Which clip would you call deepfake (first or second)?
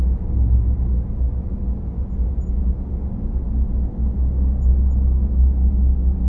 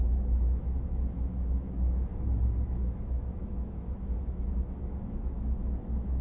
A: second